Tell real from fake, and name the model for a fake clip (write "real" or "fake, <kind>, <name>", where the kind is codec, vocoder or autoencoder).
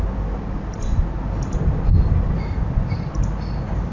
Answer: real